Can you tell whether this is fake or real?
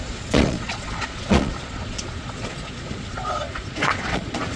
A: fake